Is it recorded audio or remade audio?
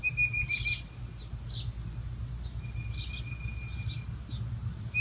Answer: recorded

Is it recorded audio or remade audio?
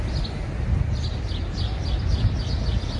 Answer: recorded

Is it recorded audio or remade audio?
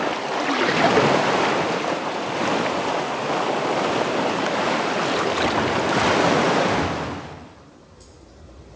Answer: recorded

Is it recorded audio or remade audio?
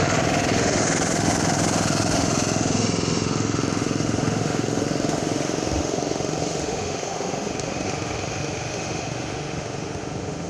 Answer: remade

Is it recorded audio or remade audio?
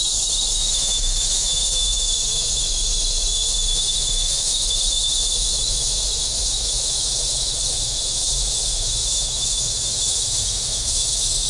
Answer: remade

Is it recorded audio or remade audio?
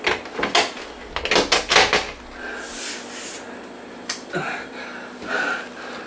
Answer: recorded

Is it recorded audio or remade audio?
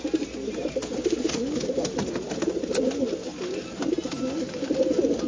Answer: recorded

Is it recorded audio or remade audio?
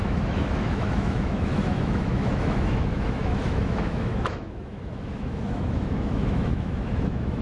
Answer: remade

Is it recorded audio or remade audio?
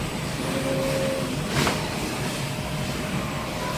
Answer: recorded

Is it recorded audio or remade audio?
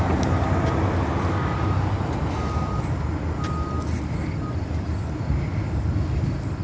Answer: recorded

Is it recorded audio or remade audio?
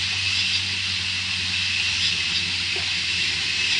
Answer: recorded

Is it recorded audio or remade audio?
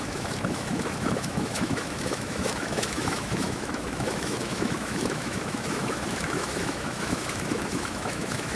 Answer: remade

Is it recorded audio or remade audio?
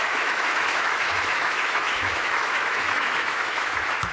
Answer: remade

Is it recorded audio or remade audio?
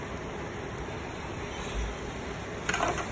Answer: recorded